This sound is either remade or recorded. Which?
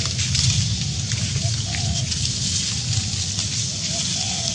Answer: recorded